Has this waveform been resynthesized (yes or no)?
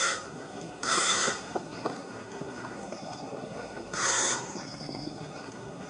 yes